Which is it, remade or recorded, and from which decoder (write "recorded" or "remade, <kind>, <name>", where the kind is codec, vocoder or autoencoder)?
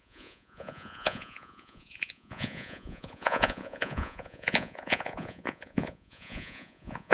remade, vocoder, Vocos